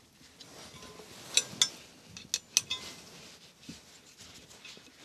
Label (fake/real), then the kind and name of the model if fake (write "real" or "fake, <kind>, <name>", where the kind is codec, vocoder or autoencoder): real